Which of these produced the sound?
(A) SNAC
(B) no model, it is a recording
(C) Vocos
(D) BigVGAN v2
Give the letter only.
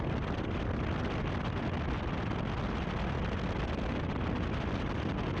B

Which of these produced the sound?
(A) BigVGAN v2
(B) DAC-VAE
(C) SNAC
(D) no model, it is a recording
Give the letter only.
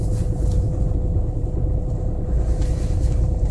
A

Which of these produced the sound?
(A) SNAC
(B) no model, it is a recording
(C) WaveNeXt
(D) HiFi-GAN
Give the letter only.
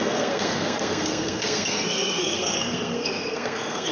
A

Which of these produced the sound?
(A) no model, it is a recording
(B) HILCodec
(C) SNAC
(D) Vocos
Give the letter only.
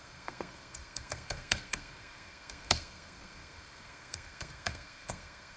C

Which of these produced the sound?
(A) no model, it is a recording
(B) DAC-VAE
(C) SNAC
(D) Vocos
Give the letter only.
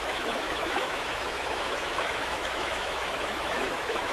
B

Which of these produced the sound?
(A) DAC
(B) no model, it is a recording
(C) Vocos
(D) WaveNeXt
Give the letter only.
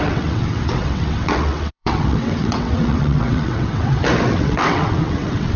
D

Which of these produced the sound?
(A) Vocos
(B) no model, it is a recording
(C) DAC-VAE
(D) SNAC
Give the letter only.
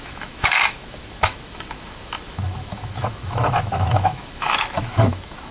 C